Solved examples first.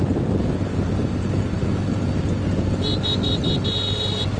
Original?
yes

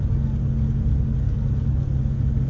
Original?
yes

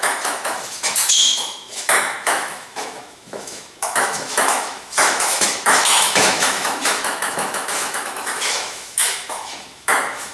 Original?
no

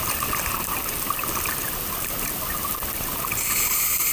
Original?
yes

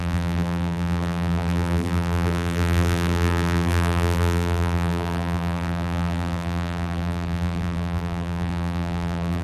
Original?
no